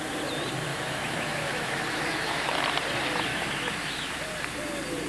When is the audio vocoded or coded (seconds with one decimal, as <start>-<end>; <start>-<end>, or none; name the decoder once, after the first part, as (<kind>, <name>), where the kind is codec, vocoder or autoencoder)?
0.7-2.6 (autoencoder, DAC-VAE); 3.3-4.1